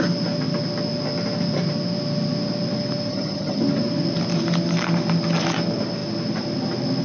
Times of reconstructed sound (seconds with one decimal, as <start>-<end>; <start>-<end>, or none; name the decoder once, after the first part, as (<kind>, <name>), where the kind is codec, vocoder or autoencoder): 3.1-3.6 (vocoder, HiFi-GAN)